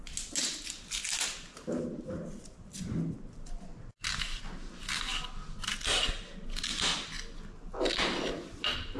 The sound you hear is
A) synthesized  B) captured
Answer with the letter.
B